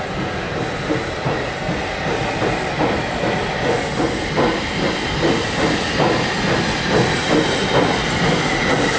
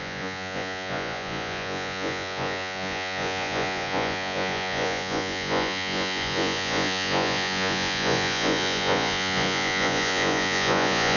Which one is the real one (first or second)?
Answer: first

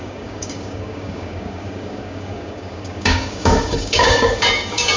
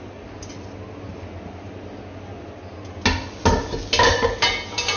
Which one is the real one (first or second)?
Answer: second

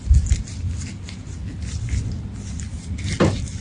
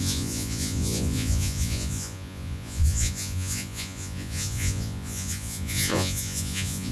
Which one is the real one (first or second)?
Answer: first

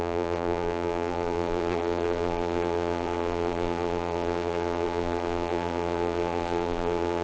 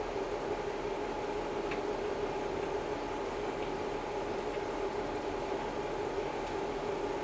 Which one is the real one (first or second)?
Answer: second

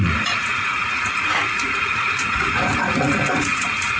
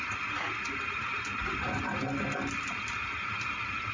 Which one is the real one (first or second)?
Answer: second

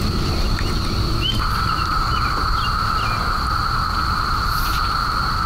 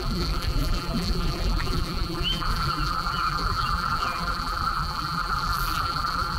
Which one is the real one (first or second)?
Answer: first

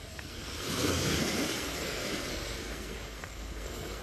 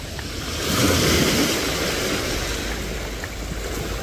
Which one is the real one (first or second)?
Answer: second